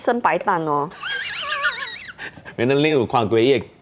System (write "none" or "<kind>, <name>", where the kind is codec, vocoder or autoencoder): vocoder, BigVGAN v2